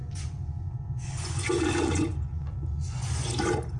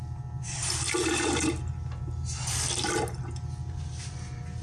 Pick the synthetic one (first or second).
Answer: first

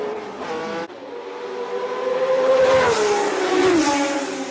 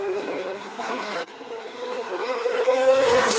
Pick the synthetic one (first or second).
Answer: second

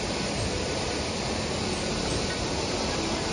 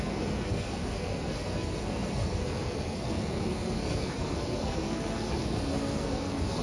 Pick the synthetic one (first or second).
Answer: second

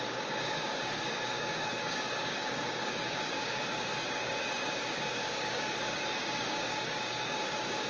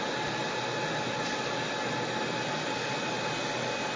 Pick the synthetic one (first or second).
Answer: first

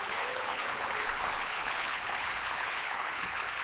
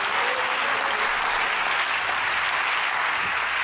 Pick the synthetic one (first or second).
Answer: first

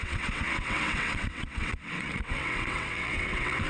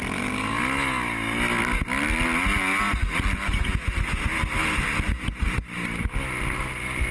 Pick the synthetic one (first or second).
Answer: first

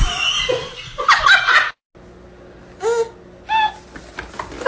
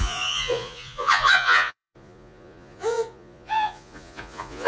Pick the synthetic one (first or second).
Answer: second